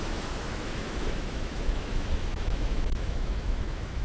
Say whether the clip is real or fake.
fake